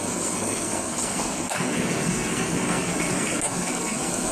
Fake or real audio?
fake